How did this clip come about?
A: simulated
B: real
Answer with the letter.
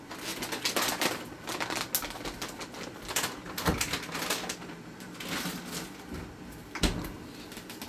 B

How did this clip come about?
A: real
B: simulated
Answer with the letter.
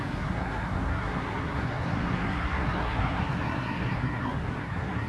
B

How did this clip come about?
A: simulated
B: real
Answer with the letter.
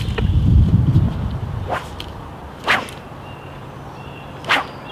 B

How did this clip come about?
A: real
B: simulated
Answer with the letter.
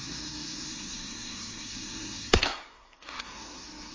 B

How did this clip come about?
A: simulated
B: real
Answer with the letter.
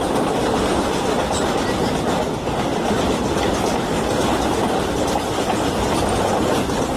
B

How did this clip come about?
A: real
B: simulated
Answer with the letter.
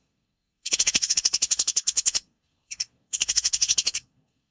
B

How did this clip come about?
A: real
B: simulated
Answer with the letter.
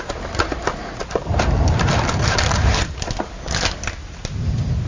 A